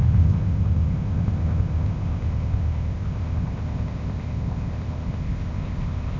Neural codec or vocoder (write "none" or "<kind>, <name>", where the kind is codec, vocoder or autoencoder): codec, ZipCodec